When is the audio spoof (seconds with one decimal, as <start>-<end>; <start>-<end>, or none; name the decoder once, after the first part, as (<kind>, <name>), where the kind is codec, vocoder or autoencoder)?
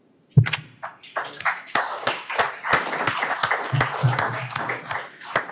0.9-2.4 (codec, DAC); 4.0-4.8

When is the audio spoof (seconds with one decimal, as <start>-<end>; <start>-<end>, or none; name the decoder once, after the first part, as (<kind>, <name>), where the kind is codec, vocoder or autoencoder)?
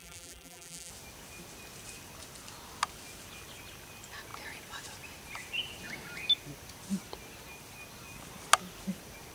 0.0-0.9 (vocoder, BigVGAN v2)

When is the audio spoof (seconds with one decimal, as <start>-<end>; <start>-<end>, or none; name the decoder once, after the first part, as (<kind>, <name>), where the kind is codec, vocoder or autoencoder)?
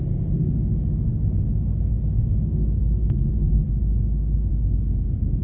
1.1-3.3 (codec, DAC)